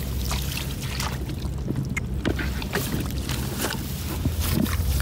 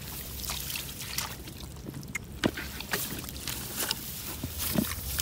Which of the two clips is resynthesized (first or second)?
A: second